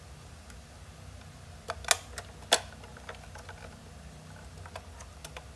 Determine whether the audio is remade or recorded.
recorded